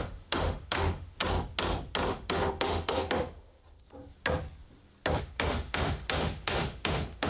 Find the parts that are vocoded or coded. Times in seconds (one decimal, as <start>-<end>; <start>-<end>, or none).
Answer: 0.0-1.2; 2.1-3.6; 5.2-7.3